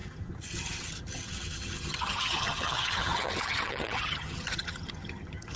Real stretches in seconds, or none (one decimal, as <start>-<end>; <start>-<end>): none